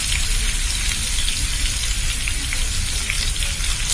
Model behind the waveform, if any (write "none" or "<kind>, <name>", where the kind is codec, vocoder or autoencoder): none